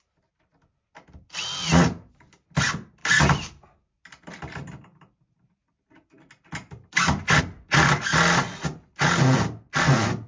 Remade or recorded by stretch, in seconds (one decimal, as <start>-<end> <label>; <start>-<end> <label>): 0.0-10.3 recorded